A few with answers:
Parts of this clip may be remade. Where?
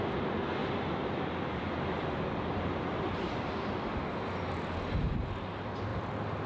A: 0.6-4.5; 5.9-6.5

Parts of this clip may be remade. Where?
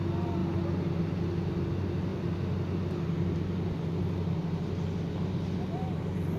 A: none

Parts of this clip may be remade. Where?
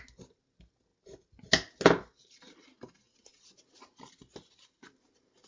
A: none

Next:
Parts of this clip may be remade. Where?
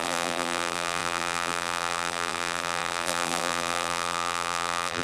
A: 0.0-5.0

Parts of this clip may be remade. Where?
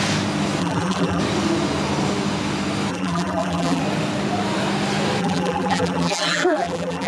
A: 0.6-1.2; 2.9-3.8; 5.2-7.1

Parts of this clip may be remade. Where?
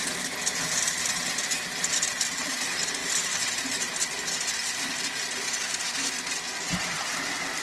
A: none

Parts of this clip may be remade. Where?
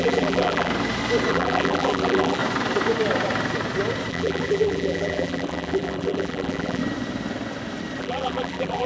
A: 0.0-0.7; 1.3-2.4; 4.1-6.8; 8.0-8.9